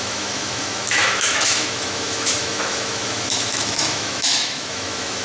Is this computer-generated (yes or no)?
yes